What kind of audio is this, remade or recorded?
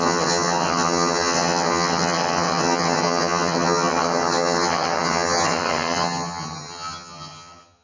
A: remade